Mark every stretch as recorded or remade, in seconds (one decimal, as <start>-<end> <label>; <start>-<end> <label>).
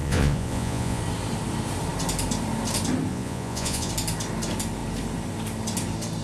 0.0-1.0 remade; 1.0-3.1 recorded; 3.1-3.9 remade; 3.9-6.2 recorded